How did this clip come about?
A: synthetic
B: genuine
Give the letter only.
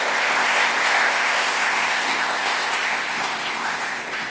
A